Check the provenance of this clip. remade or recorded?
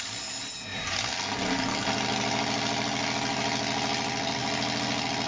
recorded